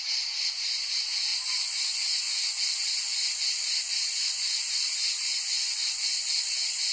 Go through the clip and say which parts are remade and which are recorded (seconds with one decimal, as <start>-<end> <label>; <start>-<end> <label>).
0.0-6.9 recorded